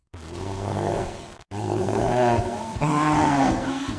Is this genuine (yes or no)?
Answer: no